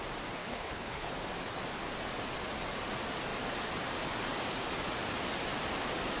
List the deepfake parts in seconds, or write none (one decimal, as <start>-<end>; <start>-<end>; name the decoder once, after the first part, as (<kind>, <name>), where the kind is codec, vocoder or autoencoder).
0.4-1.1 (codec, HILCodec)